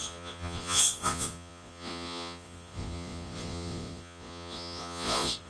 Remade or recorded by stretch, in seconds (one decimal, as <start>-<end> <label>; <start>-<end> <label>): 0.0-5.5 remade